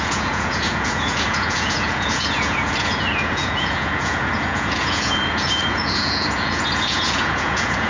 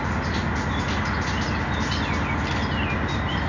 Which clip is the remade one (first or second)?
first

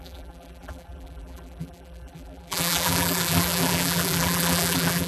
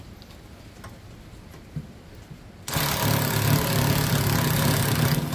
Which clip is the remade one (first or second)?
first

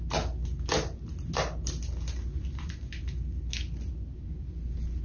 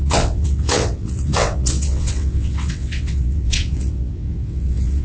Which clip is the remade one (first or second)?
second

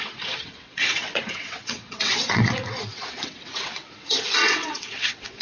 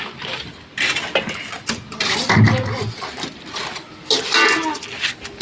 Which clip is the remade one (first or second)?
first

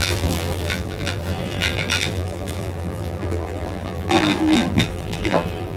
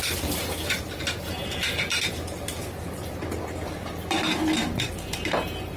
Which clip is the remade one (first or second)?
first